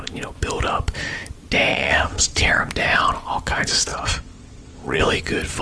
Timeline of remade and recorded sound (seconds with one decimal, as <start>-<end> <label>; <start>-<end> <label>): 0.0-1.7 recorded; 1.7-2.6 remade; 2.6-3.9 recorded; 3.9-5.0 remade; 5.0-5.6 recorded